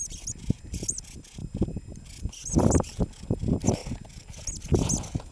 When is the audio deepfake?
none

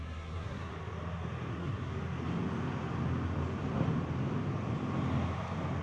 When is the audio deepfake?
0.0-0.7 (codec, SNAC); 1.5-1.9

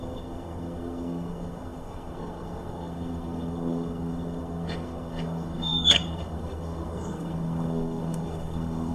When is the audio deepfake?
0.0-8.9 (codec, SNAC)

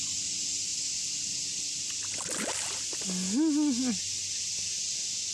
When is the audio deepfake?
none

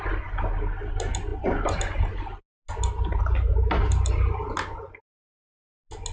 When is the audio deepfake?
none

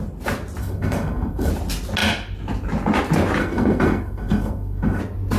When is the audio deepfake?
0.6-1.5 (codec, SNAC); 3.4-5.0

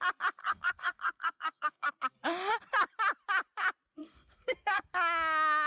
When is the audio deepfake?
0.4-1.9 (codec, SNAC); 4.0-4.9